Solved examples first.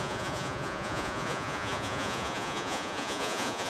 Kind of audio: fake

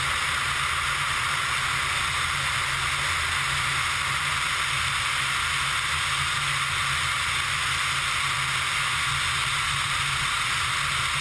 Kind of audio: real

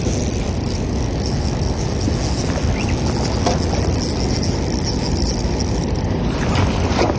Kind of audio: real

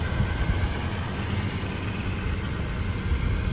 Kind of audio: real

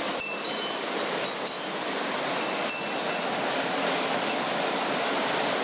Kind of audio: real